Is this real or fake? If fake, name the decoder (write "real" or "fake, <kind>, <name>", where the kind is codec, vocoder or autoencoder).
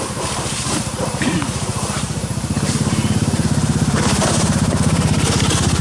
fake, vocoder, BigVGAN v2